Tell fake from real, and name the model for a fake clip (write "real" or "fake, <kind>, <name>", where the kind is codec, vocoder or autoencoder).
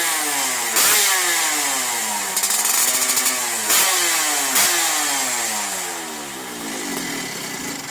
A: real